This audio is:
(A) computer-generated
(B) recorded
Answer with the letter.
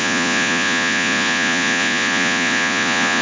A